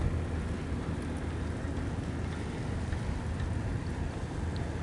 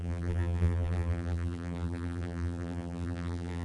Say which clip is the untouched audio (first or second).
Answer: first